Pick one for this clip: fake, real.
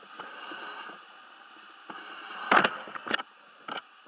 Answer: real